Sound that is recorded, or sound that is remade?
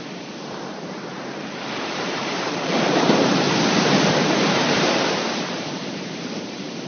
remade